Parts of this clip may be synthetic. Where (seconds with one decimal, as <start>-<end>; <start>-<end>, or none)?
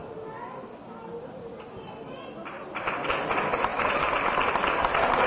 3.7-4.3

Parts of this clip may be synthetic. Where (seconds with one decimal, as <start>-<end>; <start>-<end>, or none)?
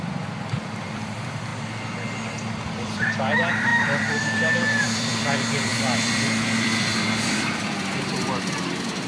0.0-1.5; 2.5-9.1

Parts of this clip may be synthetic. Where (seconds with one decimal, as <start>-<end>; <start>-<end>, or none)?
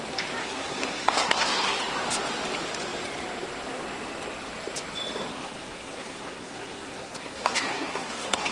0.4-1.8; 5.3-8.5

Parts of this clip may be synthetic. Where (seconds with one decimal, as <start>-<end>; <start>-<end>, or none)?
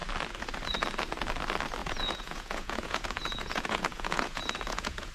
1.8-5.1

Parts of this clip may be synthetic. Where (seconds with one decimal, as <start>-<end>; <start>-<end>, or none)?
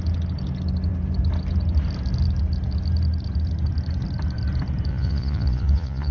4.9-6.1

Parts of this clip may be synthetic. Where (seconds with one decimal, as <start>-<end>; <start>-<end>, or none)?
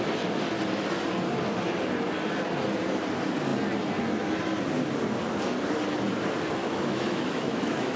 6.6-8.0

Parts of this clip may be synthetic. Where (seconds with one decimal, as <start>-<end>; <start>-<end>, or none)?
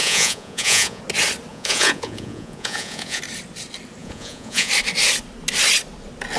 0.0-1.0; 1.5-3.2; 4.0-4.7